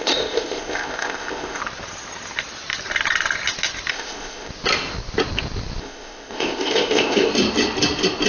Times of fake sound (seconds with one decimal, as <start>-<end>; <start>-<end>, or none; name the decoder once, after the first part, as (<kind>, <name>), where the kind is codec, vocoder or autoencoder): 0.0-1.6 (codec, ZipCodec); 3.9-4.5; 5.8-7.3